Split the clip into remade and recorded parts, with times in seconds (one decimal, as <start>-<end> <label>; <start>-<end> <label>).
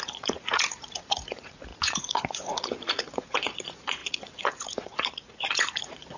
0.0-6.2 remade